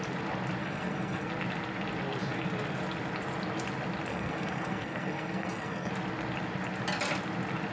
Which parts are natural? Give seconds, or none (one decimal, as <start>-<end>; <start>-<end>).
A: 0.0-0.6; 1.3-4.1; 5.9-7.7